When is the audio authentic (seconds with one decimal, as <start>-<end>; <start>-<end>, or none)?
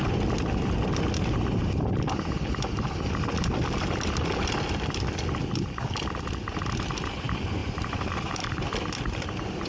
0.0-7.6; 8.4-9.7